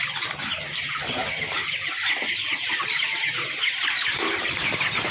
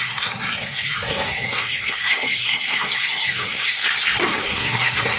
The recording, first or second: first